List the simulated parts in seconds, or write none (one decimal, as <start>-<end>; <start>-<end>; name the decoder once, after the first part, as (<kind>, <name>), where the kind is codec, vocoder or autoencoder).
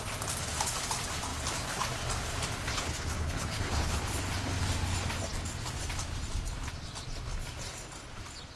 2.7-4.0 (codec, HILCodec)